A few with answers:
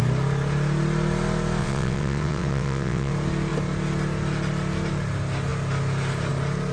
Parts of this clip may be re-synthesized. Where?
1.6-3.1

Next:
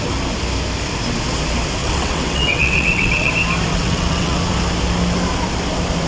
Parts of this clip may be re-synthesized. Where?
1.8-3.3; 3.7-4.4

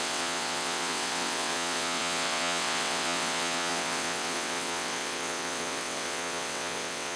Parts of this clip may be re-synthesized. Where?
0.0-7.2

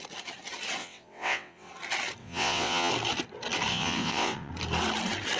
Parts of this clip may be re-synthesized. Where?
0.8-1.7; 2.2-2.9; 3.7-4.5

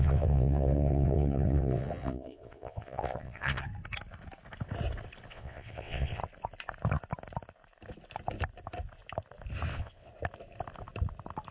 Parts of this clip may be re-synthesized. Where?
0.0-3.7; 5.3-6.2; 9.7-10.1